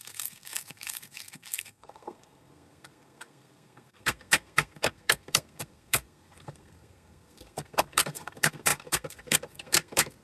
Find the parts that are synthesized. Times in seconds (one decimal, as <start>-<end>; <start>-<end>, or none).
0.0-10.2